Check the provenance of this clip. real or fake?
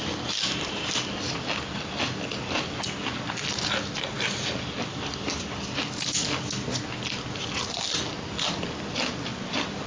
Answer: real